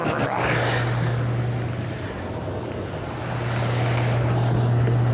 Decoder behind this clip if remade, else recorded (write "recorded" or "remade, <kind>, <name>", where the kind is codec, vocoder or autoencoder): recorded